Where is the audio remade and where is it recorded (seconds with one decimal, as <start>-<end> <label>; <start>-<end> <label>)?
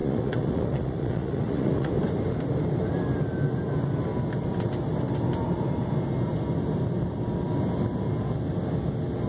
0.0-1.9 remade; 1.9-9.3 recorded